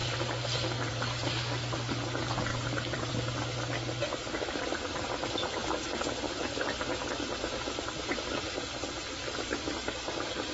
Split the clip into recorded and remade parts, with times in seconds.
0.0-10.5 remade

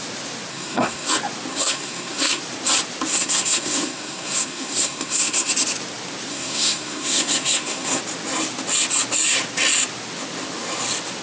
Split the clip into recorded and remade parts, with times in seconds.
0.0-0.5 recorded; 0.5-1.1 remade; 1.1-1.5 recorded; 1.5-2.4 remade; 2.4-3.1 recorded; 3.1-5.5 remade; 5.5-6.3 recorded; 6.3-8.0 remade; 8.0-11.2 recorded

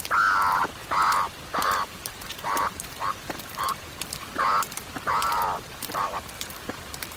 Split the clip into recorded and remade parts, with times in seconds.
0.0-0.8 remade; 0.8-1.6 recorded; 1.6-7.2 remade

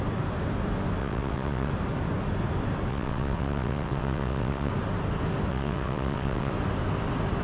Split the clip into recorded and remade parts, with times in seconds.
0.0-1.0 recorded; 1.0-1.7 remade; 1.7-2.9 recorded; 2.9-4.7 remade; 4.7-5.5 recorded; 5.5-6.5 remade; 6.5-7.4 recorded

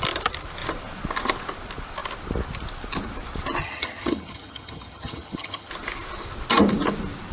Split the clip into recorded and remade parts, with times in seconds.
0.0-3.6 recorded; 3.6-5.7 remade; 5.7-7.3 recorded